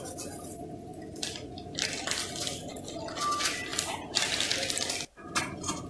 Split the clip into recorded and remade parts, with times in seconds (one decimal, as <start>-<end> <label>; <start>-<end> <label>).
0.0-5.9 recorded